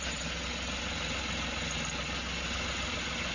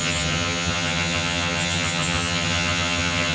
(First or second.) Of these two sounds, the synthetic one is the second